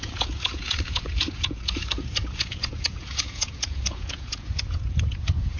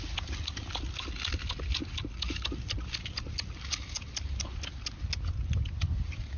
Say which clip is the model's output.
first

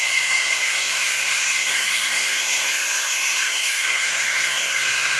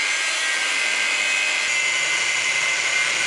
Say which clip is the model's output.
first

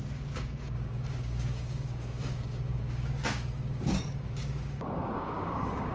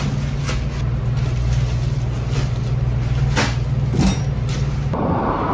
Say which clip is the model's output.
first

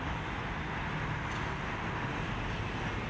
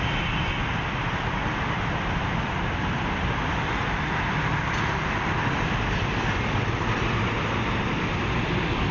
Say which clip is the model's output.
second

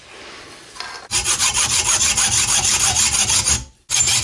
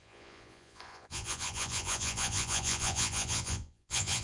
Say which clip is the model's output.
second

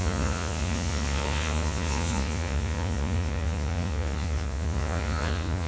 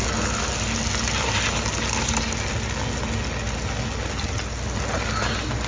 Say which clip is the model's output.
first